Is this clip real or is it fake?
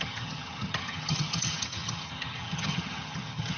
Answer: fake